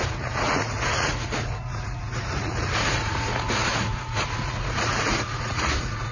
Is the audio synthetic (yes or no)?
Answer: yes